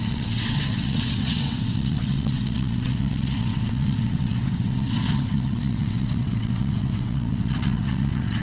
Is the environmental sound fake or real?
fake